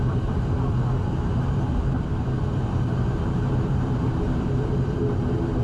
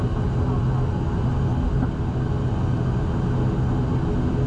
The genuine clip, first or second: second